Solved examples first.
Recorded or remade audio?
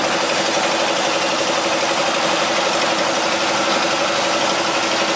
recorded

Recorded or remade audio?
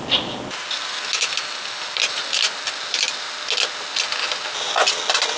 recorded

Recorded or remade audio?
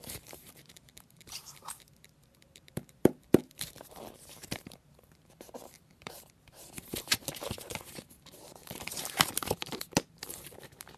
remade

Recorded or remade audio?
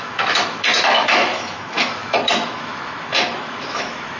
remade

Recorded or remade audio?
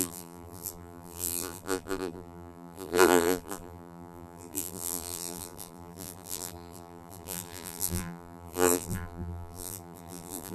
remade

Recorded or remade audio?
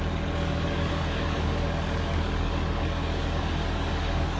remade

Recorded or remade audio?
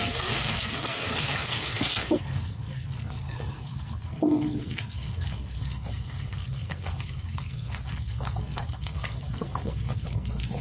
remade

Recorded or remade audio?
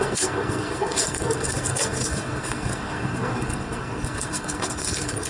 remade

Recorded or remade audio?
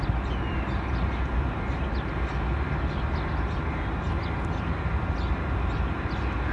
recorded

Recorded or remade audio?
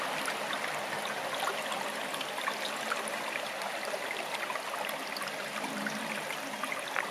recorded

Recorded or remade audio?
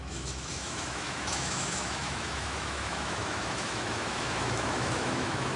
remade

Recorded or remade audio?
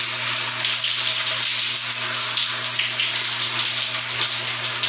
recorded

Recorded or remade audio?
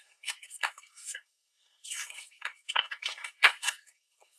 remade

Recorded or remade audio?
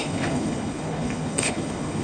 remade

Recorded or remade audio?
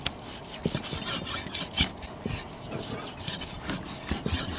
recorded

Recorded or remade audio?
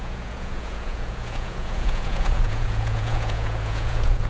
remade